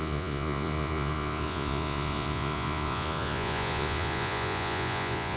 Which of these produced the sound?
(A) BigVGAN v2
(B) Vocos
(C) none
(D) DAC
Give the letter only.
B